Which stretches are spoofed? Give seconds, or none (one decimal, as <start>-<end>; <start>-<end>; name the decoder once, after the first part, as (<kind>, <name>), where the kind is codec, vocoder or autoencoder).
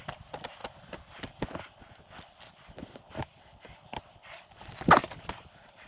none